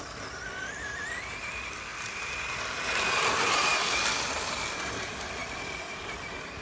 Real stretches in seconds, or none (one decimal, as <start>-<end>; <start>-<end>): 0.0-6.6